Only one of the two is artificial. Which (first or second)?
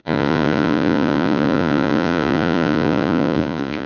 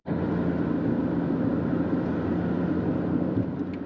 first